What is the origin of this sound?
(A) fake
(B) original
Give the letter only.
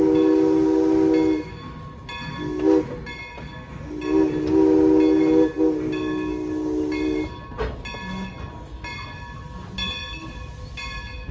B